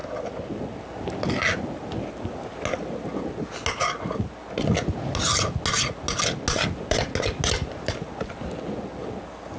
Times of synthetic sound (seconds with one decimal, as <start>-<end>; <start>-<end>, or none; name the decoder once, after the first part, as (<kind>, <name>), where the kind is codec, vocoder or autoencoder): none